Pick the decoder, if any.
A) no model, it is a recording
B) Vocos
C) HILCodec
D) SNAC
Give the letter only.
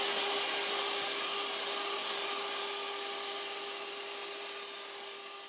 A